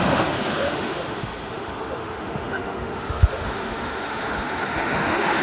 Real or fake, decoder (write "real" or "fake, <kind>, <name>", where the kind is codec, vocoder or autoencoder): fake, autoencoder, DAC-VAE